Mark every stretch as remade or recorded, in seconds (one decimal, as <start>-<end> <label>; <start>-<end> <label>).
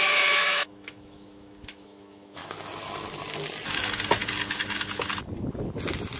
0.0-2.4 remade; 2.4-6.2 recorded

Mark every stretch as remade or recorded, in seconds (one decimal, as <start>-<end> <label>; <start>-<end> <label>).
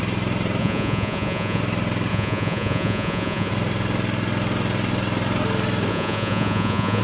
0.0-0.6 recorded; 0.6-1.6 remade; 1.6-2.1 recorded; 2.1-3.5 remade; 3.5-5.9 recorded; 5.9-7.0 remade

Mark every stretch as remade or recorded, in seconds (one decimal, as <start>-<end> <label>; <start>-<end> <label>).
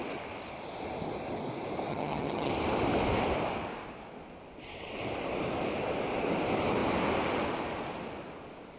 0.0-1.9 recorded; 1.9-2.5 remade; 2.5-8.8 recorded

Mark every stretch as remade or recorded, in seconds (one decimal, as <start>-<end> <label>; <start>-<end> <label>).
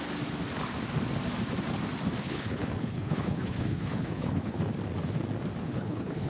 0.0-2.2 recorded; 2.2-4.6 remade; 4.6-5.6 recorded; 5.6-6.3 remade